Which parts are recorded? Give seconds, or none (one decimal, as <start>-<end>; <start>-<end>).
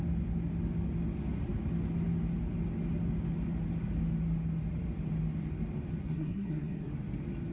0.0-6.0; 6.9-7.5